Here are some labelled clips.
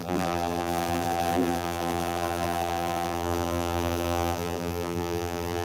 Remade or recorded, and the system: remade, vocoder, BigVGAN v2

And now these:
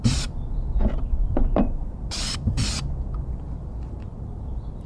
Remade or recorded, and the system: remade, vocoder, BigVGAN v2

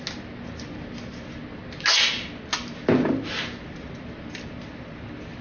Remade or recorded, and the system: recorded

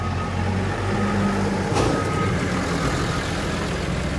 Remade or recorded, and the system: recorded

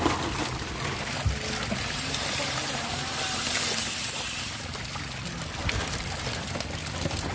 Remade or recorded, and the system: recorded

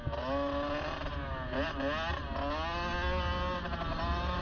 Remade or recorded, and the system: recorded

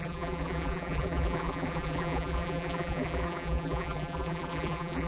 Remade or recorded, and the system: remade, vocoder, BigVGAN v2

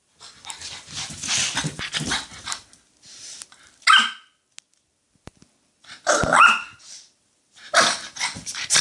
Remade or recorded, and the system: recorded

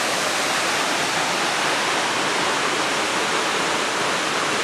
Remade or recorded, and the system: recorded